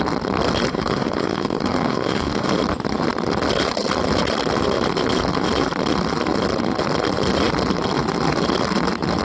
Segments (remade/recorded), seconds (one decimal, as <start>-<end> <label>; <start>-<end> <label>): 0.0-0.7 recorded; 0.7-2.5 remade; 2.5-9.2 recorded